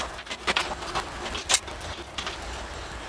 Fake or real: real